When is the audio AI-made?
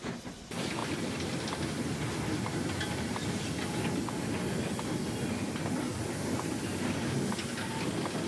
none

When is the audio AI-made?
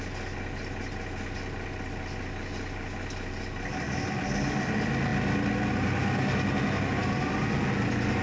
none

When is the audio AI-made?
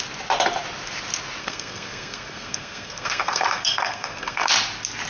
1.4-4.5 (codec, SNAC)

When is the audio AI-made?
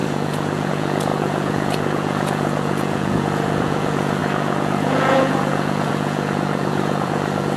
0.0-7.6 (vocoder, Vocos)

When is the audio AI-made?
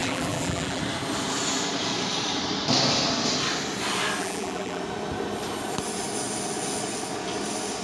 0.0-0.8 (vocoder, BigVGAN v2); 4.2-4.8